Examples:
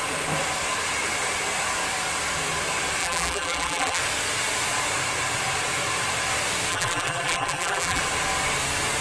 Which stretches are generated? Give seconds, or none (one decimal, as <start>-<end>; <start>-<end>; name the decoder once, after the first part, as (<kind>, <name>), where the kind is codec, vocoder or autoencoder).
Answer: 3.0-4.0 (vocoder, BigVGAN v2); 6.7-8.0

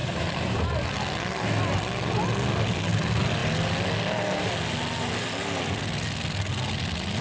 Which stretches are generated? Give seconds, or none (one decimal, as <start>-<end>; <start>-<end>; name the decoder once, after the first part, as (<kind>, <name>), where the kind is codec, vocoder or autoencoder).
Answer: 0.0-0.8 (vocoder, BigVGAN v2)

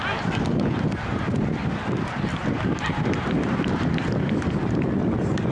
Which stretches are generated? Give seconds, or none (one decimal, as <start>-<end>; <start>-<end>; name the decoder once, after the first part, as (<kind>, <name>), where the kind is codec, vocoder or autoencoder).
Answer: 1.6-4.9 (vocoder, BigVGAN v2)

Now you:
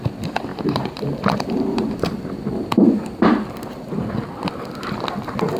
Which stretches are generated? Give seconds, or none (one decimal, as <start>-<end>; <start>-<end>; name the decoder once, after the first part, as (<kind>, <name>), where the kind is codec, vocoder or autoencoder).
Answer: 0.5-3.9 (vocoder, BigVGAN v2)